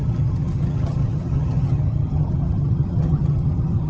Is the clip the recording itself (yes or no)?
no